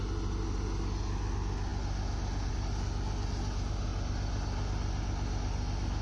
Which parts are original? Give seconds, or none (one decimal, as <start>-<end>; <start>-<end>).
0.0-6.0